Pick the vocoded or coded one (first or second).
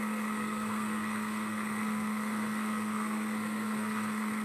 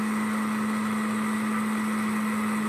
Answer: first